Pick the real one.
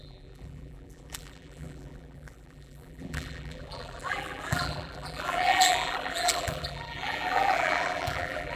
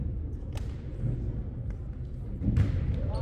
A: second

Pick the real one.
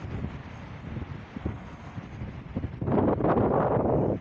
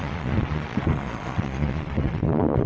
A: first